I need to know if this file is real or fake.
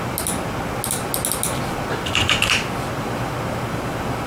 real